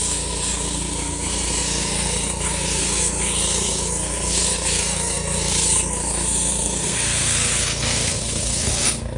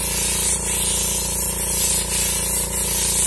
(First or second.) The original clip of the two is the second